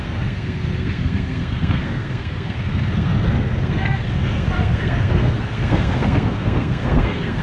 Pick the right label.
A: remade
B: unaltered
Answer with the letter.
A